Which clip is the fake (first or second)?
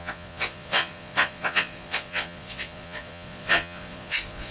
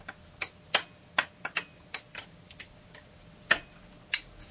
first